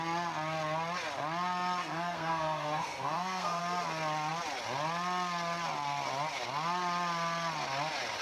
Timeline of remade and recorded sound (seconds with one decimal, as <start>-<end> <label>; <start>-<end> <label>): 0.0-1.8 recorded; 1.8-3.6 remade; 3.6-8.2 recorded